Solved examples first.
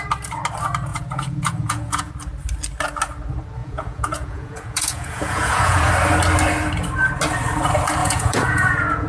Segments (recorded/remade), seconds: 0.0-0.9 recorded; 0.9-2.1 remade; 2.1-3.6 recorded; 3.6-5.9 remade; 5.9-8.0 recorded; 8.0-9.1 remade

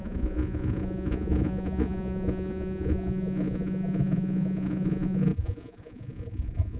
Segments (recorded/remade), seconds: 0.0-6.8 remade

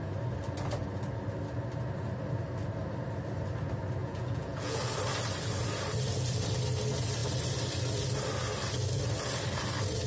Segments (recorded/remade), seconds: 0.0-4.0 recorded; 4.0-4.8 remade; 4.8-10.1 recorded

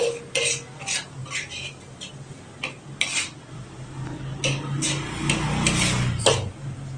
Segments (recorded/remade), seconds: 0.0-7.0 recorded

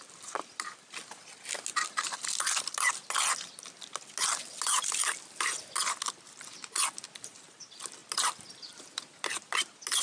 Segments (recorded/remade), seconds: 0.0-10.0 recorded